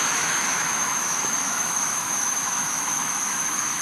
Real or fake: fake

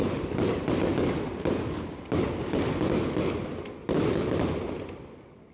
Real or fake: real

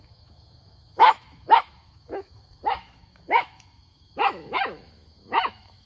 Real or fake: fake